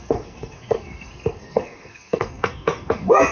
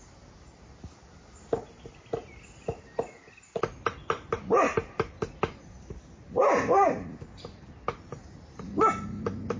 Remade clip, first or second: first